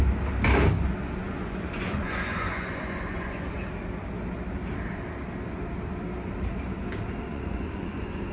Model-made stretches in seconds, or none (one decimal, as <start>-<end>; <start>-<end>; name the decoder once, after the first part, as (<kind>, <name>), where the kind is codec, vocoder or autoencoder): 1.2-3.5 (vocoder, Vocos); 7.3-8.3